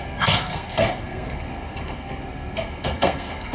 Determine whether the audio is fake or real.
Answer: fake